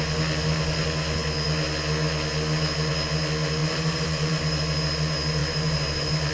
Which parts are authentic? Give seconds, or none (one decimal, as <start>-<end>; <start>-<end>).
0.0-3.6; 4.4-5.4